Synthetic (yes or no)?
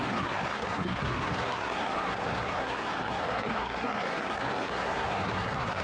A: yes